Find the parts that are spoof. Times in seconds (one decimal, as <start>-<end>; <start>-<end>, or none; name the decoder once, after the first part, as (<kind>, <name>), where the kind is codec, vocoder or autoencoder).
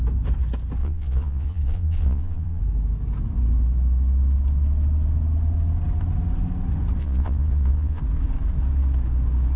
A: 0.8-2.6 (vocoder, Vocos); 7.0-8.0